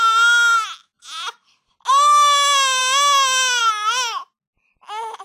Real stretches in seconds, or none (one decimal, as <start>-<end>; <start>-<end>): 0.0-5.2